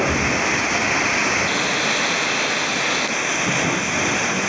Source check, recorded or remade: recorded